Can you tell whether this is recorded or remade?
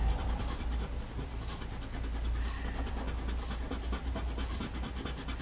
recorded